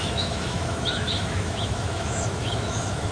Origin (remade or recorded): remade